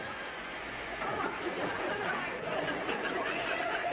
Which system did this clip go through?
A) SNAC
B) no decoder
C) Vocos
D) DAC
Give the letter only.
C